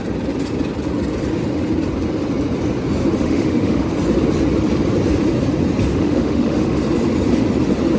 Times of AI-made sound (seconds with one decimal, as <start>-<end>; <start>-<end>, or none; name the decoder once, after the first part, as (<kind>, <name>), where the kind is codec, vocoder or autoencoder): 3.2-3.9 (autoencoder, DAC-VAE); 5.9-6.8